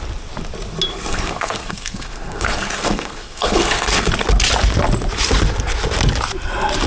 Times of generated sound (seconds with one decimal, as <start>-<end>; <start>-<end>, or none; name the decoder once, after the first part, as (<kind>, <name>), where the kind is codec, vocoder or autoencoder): 0.9-4.1 (codec, SNAC)